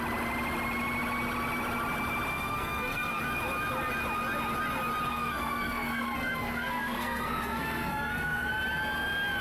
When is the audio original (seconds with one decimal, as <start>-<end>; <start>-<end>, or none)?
0.0-2.3; 3.2-5.1; 8.5-9.4